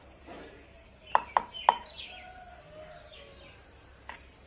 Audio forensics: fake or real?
real